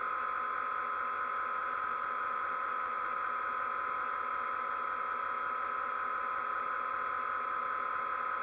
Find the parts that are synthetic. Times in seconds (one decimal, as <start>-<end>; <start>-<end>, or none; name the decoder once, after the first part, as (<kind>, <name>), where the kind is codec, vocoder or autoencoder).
1.6-3.5 (vocoder, BigVGAN v2)